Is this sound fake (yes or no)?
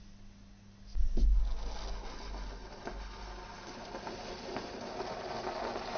no